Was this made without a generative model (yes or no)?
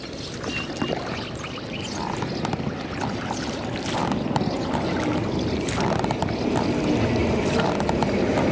yes